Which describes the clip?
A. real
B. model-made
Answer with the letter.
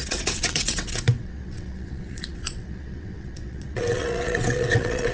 B